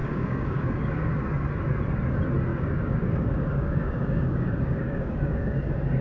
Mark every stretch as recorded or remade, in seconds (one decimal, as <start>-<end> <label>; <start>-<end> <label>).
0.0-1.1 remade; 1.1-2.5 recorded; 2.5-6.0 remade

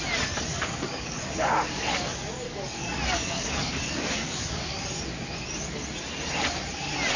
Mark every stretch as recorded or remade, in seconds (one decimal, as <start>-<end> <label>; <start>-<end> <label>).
0.0-0.5 recorded; 0.5-4.8 remade; 4.8-7.2 recorded

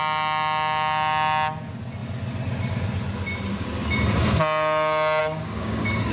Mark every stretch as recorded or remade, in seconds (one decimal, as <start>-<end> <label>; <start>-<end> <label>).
0.0-5.2 recorded; 5.2-6.1 remade

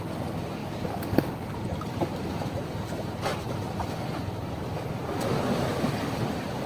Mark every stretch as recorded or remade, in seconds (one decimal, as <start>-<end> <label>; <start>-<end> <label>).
0.0-0.6 recorded; 0.6-1.5 remade; 1.5-6.7 recorded

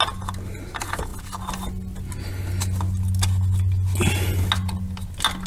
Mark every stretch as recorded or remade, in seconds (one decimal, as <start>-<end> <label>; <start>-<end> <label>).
0.0-5.5 recorded